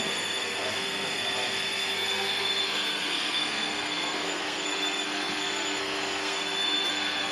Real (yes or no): no